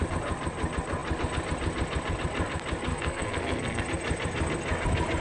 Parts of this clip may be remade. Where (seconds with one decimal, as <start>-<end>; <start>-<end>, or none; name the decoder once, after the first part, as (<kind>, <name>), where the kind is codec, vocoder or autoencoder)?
2.9-3.8 (codec, SNAC)